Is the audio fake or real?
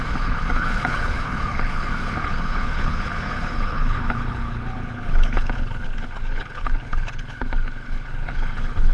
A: fake